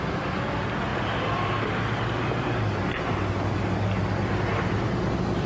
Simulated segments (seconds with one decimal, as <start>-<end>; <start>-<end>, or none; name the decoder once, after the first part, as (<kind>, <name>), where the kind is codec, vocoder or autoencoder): none